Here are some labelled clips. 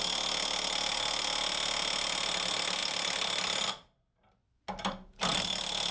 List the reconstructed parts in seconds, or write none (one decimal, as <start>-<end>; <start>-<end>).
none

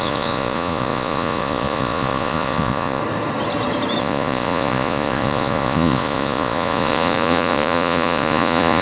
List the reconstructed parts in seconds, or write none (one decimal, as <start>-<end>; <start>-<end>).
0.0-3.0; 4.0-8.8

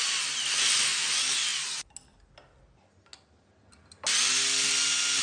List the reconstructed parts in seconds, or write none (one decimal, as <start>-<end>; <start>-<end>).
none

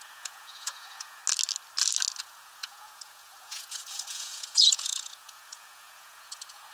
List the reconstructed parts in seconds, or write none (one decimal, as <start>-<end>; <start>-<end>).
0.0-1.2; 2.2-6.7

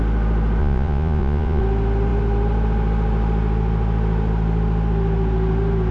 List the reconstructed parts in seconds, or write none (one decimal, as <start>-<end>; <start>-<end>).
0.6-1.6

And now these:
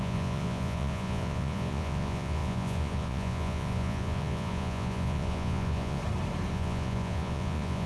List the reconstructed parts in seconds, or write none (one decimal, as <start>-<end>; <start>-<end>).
0.0-6.0; 6.5-7.9